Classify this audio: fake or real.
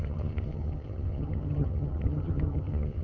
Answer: fake